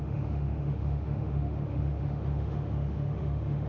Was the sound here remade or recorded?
remade